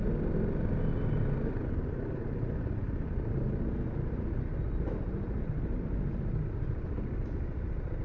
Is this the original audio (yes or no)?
yes